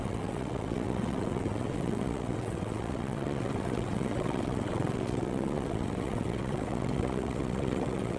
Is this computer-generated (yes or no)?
yes